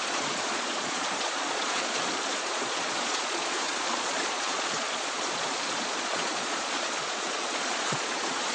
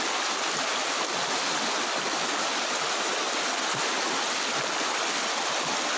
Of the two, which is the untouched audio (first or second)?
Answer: second